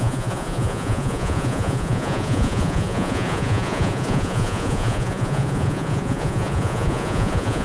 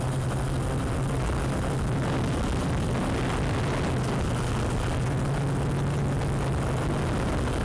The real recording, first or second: second